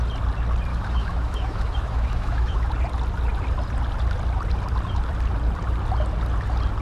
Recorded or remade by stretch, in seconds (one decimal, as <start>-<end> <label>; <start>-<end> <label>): 0.0-0.7 recorded; 0.7-2.7 remade; 2.7-6.8 recorded